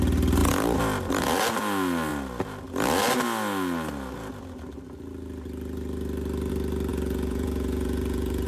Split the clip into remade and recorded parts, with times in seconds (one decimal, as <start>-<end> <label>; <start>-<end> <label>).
0.0-6.9 recorded; 6.9-8.5 remade